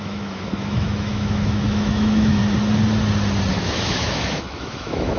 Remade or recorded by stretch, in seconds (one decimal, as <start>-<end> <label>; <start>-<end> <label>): 0.0-2.4 remade; 2.4-3.5 recorded; 3.5-5.2 remade

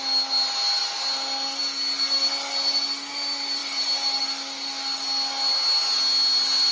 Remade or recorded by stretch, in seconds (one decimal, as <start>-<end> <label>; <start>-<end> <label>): 0.0-6.7 recorded

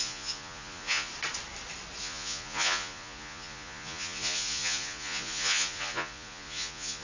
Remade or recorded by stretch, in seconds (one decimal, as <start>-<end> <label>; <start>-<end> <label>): 0.0-1.1 remade; 1.1-2.0 recorded; 2.0-7.0 remade